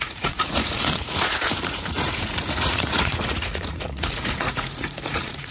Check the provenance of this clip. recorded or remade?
remade